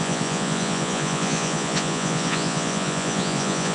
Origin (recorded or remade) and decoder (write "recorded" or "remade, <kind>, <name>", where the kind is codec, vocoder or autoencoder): remade, vocoder, Vocos